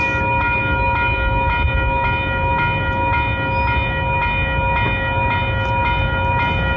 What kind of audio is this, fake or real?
real